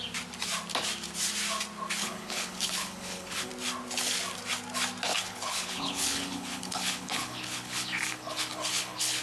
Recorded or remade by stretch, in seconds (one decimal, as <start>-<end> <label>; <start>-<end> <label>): 0.0-2.0 recorded; 2.0-3.5 remade; 3.5-5.1 recorded; 5.1-9.2 remade